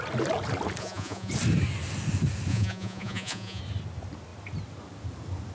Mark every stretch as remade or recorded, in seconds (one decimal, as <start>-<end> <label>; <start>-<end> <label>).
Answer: 0.0-0.8 recorded; 0.8-1.3 remade; 1.3-2.5 recorded; 2.5-3.6 remade; 3.6-5.5 recorded

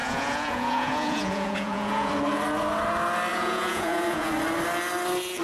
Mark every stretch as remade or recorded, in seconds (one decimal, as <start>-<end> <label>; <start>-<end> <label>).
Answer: 0.0-2.1 remade; 2.1-3.3 recorded; 3.3-4.3 remade; 4.3-5.4 recorded

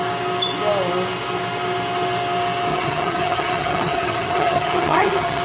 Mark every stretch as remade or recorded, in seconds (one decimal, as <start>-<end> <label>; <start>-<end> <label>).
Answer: 0.0-2.7 recorded; 2.7-5.4 remade

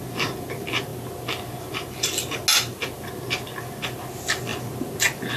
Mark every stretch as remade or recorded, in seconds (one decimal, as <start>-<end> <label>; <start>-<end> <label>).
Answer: 0.0-5.4 recorded

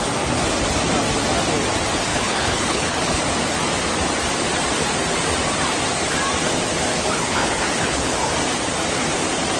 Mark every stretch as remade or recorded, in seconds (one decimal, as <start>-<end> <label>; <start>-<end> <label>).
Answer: 0.0-2.1 recorded; 2.1-3.2 remade; 3.2-6.9 recorded; 6.9-8.3 remade; 8.3-9.6 recorded

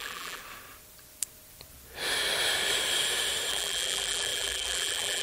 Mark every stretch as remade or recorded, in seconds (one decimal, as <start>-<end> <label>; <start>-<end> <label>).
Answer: 0.0-0.4 remade; 0.4-3.5 recorded; 3.5-5.2 remade